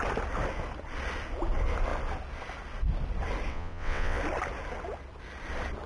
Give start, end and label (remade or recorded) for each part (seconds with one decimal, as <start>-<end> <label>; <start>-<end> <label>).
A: 0.0-3.5 recorded; 3.5-4.2 remade; 4.2-5.9 recorded